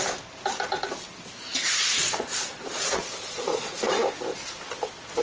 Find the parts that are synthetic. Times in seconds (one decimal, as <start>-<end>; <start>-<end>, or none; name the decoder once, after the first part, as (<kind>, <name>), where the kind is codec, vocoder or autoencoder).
1.5-3.9 (vocoder, Vocos)